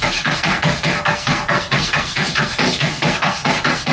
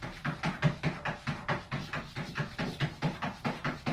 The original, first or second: second